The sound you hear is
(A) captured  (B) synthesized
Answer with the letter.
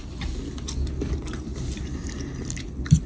A